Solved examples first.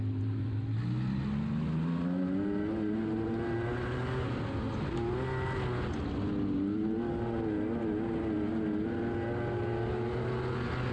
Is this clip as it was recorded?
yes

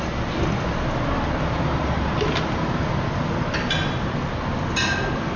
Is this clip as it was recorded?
yes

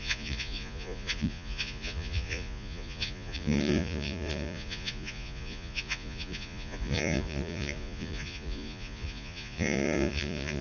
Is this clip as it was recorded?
no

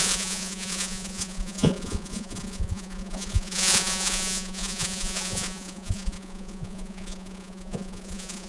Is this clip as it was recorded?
no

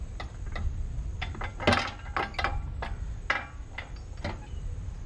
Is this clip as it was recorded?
yes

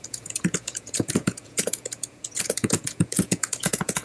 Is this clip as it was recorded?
no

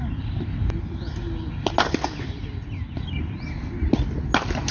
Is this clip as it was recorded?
yes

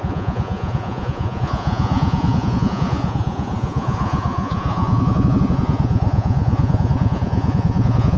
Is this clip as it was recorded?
no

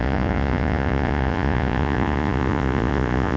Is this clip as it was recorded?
no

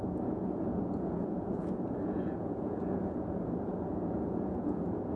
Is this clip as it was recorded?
no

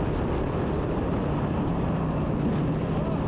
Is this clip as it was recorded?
yes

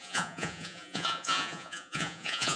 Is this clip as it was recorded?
no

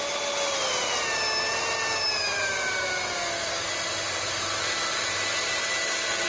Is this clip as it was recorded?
yes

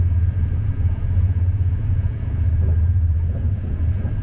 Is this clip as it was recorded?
no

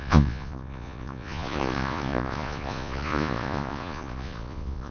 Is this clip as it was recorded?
no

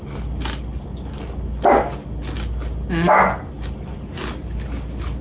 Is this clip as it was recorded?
yes